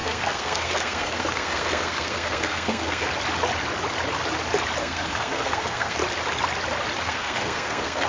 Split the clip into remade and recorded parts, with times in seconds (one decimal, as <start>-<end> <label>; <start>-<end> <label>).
0.0-3.1 remade; 3.1-4.8 recorded; 4.8-6.0 remade; 6.0-7.0 recorded; 7.0-8.1 remade